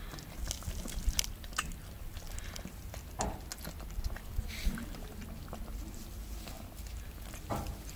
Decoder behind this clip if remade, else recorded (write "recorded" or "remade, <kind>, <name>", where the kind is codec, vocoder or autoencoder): recorded